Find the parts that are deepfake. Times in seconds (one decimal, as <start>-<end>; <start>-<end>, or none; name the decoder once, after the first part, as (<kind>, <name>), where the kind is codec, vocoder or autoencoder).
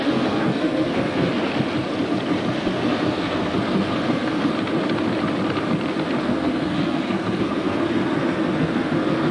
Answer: 0.0-1.3 (codec, SNAC); 2.5-4.5; 6.2-9.3